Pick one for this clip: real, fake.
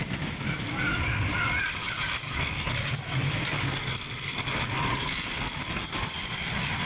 real